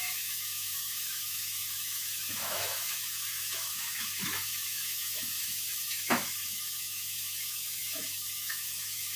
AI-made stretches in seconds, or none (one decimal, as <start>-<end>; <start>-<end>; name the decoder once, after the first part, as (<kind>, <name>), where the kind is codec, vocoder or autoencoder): 0.0-9.2 (autoencoder, DAC-VAE)